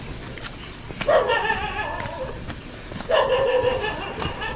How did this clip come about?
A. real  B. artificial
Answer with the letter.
A